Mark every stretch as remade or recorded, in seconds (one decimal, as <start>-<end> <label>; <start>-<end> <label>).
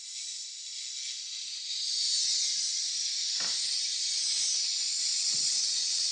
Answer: 0.0-5.1 recorded; 5.1-6.1 remade